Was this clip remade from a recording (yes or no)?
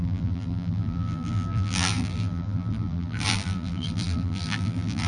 yes